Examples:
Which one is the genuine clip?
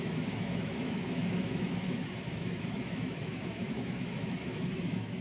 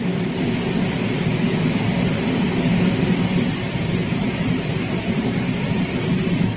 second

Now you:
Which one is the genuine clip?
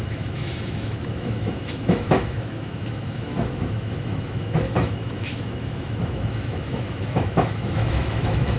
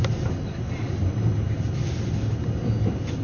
second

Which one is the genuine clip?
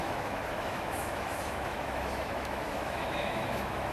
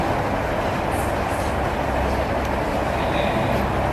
second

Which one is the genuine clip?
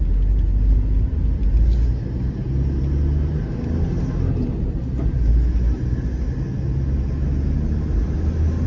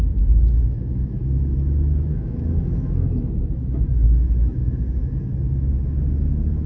first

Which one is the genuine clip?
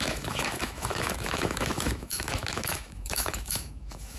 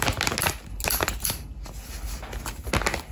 second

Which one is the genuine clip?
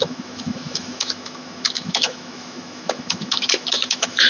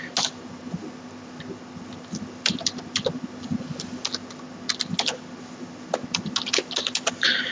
second